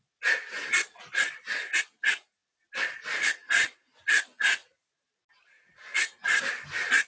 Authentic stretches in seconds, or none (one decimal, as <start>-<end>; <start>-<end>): 0.0-4.6; 6.5-7.1